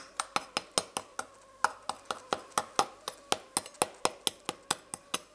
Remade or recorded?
recorded